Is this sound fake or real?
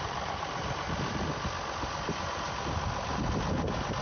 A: real